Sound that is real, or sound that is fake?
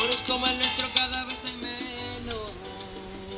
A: real